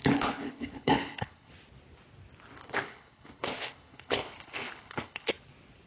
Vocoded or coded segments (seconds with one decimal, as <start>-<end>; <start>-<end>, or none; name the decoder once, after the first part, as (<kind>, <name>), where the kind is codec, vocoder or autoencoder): 0.0-1.5 (codec, HILCodec); 2.6-5.3